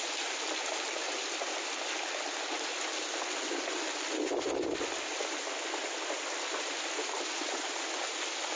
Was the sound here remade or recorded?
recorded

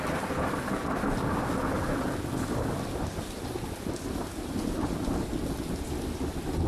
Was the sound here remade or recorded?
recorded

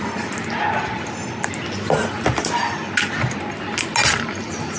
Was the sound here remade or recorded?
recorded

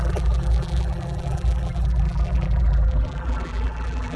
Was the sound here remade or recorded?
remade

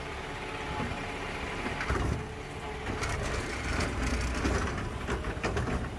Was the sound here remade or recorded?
recorded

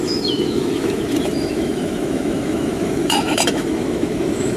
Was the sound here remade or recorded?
remade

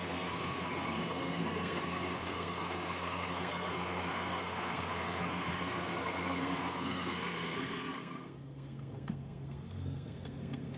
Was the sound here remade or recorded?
remade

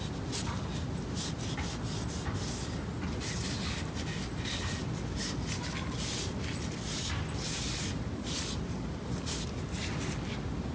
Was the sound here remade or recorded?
recorded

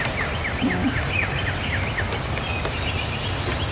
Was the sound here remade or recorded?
recorded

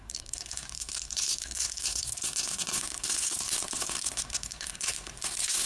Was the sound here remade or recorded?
remade